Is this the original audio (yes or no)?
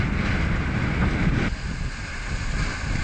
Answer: yes